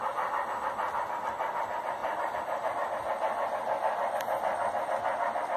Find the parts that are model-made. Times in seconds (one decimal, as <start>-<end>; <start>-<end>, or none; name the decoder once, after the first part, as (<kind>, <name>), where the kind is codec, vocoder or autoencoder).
none